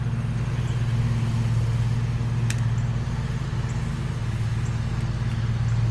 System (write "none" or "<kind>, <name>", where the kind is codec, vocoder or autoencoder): none